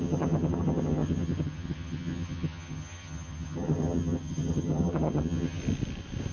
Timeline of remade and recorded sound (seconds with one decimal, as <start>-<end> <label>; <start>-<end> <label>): 0.0-5.6 remade; 5.6-6.3 recorded